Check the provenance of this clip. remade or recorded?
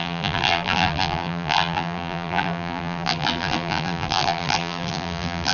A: remade